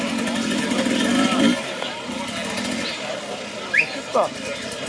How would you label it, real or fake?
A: real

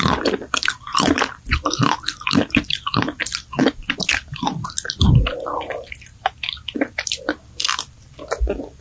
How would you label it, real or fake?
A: real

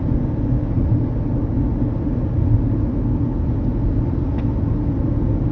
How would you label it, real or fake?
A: real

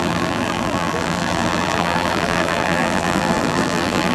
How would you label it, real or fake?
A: fake